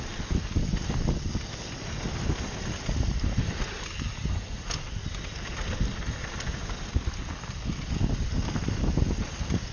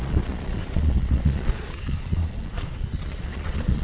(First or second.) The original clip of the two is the first